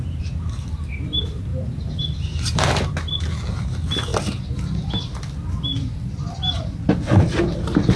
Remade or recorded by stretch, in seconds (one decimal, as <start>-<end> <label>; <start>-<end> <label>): 0.0-4.1 recorded; 4.1-5.0 remade; 5.0-5.7 recorded; 5.7-6.3 remade; 6.3-8.0 recorded

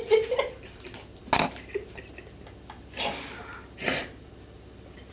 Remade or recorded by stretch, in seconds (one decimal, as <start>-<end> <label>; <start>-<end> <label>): 0.0-5.1 recorded

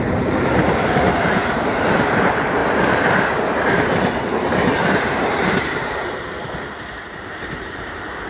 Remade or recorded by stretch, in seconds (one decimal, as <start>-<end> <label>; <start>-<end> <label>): 0.0-2.6 remade; 2.6-3.7 recorded; 3.7-8.3 remade

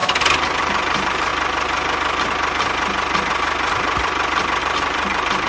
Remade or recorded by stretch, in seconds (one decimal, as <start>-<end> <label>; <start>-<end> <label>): 0.0-0.6 recorded; 0.6-1.3 remade; 1.3-4.6 recorded; 4.6-5.5 remade

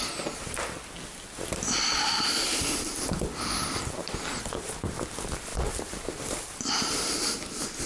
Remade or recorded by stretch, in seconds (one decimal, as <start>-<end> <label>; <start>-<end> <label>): 0.0-5.5 recorded; 5.5-6.7 remade; 6.7-7.9 recorded

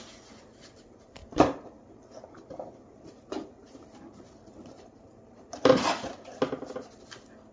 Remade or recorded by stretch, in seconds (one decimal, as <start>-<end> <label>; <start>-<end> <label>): 0.0-1.2 recorded; 1.2-1.9 remade; 1.9-3.6 recorded; 3.6-5.7 remade; 5.7-7.5 recorded